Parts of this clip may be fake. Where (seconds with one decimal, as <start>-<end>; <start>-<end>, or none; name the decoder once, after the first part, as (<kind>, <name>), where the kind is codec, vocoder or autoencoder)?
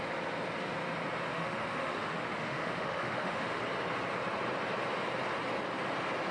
1.3-3.6 (autoencoder, DAC-VAE)